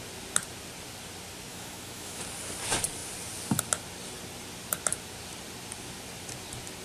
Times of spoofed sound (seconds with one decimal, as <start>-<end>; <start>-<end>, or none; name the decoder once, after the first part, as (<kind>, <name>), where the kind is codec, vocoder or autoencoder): 1.5-2.2 (autoencoder, DAC-VAE)